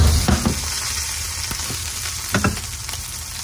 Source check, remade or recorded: recorded